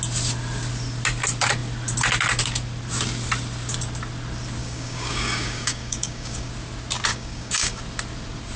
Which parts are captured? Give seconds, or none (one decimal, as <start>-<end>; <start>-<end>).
0.0-4.6; 6.5-7.1; 7.8-8.6